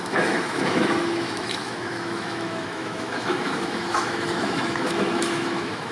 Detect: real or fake fake